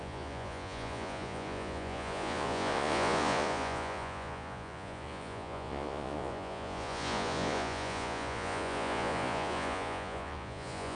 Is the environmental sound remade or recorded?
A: remade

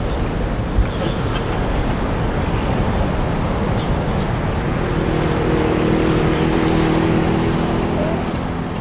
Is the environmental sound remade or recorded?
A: recorded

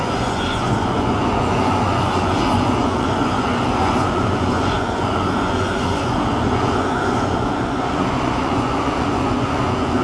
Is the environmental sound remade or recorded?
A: remade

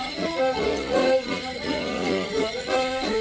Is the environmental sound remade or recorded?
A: remade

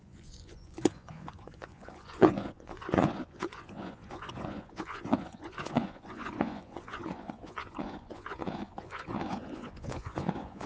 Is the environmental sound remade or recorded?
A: remade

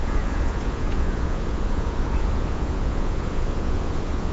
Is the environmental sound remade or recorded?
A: remade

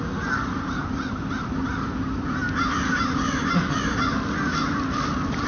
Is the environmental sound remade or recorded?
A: recorded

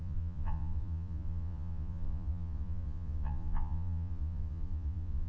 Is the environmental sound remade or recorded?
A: remade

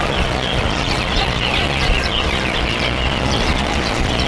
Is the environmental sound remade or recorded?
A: remade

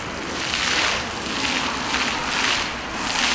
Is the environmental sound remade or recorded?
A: recorded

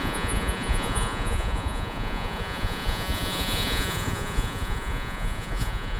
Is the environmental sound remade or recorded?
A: remade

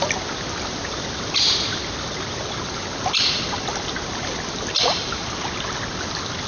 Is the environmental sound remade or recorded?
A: recorded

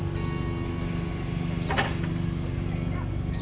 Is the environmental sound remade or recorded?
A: recorded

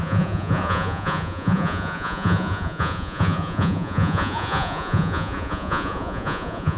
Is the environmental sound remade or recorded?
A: remade